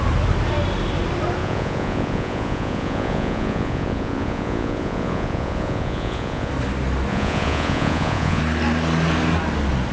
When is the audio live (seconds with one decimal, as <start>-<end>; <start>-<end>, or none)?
0.0-1.4; 6.5-7.1; 8.4-9.9